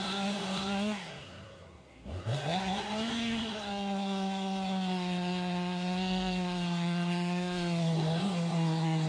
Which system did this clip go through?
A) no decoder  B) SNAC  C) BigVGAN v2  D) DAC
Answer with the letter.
B